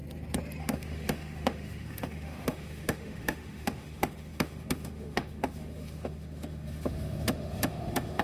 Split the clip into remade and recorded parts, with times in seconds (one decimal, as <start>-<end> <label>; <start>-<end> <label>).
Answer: 0.0-0.6 recorded; 0.6-8.2 remade